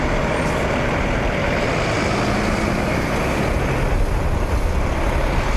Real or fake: real